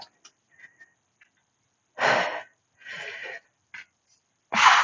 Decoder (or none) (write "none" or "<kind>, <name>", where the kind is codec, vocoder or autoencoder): none